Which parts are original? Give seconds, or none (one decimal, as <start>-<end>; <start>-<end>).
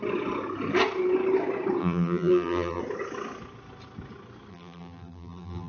0.0-1.8; 2.8-4.5